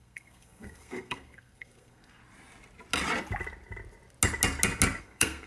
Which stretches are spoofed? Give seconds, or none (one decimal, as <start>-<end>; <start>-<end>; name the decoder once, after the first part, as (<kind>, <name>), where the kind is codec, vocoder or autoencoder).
0.0-2.2 (codec, SNAC); 5.0-5.5